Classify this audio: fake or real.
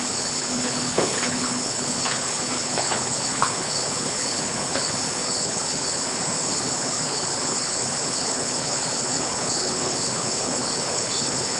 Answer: fake